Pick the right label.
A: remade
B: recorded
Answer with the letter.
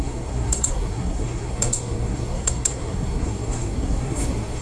A